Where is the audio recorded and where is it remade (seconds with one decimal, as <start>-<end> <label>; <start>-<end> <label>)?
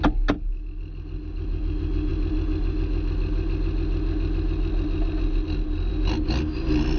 0.0-7.0 recorded